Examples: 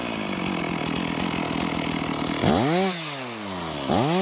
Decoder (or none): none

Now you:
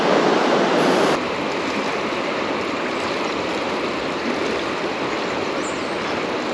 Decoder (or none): none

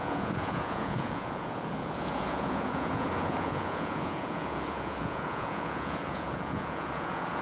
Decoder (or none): vocoder, Vocos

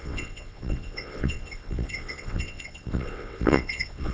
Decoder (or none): vocoder, WaveNeXt